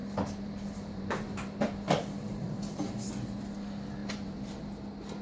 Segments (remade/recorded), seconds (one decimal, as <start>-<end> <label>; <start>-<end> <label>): 0.0-3.1 remade; 3.1-4.0 recorded; 4.0-4.5 remade; 4.5-5.2 recorded